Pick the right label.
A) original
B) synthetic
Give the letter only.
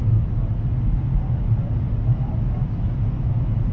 A